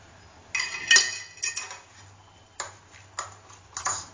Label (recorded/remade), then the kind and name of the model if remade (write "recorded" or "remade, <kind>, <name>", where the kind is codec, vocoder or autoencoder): recorded